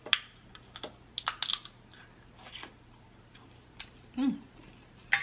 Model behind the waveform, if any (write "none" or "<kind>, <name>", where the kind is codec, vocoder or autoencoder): none